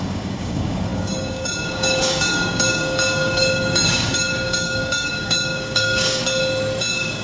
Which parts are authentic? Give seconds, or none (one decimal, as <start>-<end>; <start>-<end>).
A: 6.2-6.8